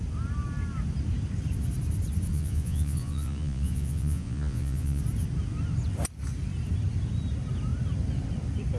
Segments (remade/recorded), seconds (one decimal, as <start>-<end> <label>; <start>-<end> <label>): 0.0-2.3 recorded; 2.3-5.0 remade; 5.0-8.8 recorded